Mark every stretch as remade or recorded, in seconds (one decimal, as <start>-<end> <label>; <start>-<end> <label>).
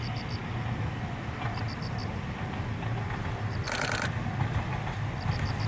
0.0-5.7 recorded